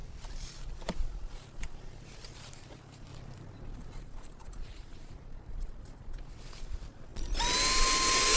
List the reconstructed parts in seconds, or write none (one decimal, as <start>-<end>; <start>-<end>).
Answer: 0.0-3.1; 4.0-7.1